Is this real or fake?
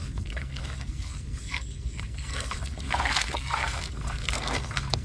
fake